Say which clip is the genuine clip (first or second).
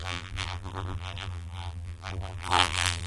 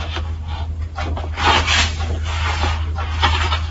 second